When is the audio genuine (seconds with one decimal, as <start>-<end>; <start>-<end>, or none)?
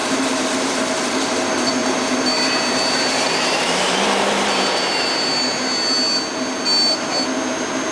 0.7-1.8; 5.4-7.9